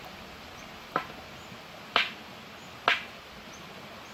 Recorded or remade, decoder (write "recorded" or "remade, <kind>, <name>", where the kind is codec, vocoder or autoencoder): recorded